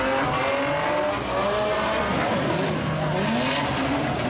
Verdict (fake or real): real